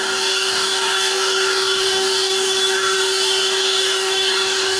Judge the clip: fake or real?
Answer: fake